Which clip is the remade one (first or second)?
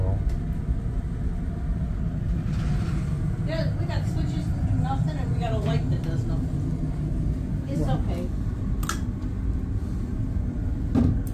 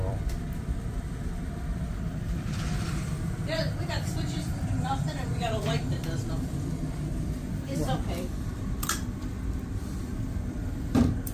second